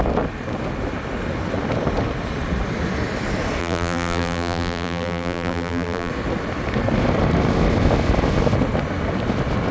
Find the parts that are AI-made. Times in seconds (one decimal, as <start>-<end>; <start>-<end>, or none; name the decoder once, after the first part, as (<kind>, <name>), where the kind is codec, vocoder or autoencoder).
3.6-6.1 (vocoder, BigVGAN v2)